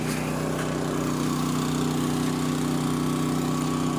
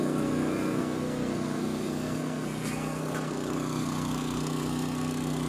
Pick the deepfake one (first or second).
second